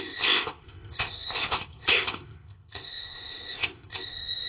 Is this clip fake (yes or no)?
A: yes